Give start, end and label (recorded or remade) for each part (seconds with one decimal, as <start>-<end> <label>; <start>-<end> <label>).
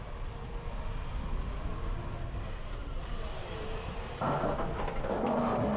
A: 0.0-1.7 recorded; 1.7-4.5 remade; 4.5-5.8 recorded